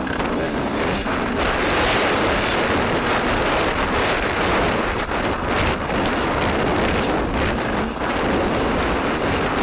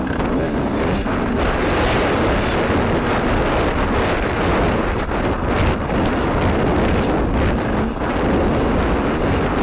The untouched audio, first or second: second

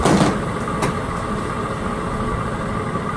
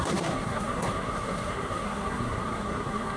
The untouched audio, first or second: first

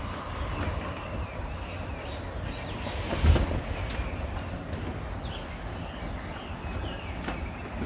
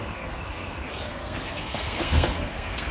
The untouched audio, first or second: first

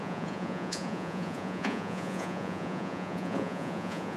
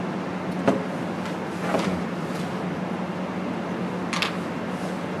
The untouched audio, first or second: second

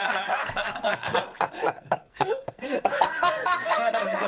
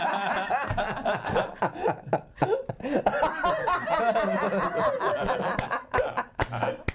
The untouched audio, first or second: second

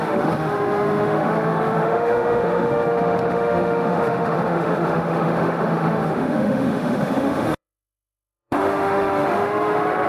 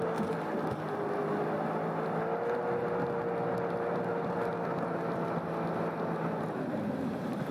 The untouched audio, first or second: second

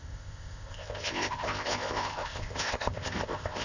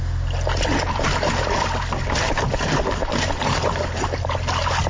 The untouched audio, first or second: second